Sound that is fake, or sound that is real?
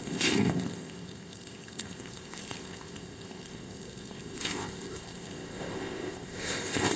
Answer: fake